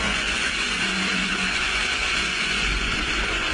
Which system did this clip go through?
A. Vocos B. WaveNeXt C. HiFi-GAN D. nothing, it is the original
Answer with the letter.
A